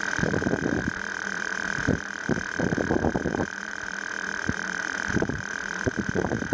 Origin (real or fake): fake